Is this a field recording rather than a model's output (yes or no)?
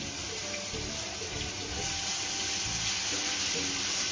yes